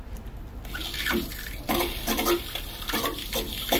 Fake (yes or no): no